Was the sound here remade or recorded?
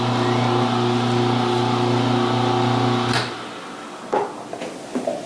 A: recorded